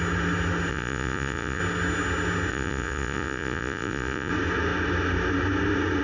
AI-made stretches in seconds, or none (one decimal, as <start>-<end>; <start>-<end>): 0.7-1.6; 2.5-4.3